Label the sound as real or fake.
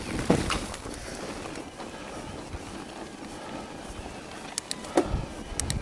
real